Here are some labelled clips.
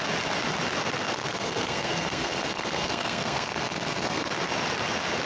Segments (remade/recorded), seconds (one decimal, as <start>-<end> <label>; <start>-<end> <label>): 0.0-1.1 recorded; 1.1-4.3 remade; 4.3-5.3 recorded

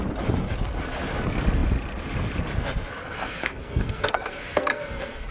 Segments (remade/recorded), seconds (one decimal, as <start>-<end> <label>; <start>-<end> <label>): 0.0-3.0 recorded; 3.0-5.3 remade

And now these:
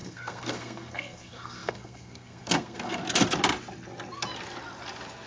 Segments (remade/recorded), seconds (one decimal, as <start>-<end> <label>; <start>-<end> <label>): 0.0-3.0 remade; 3.0-5.3 recorded

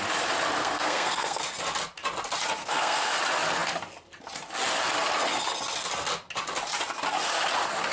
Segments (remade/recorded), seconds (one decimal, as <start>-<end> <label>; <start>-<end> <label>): 0.0-0.6 recorded; 0.6-1.4 remade; 1.4-2.6 recorded; 2.6-3.2 remade; 3.2-7.9 recorded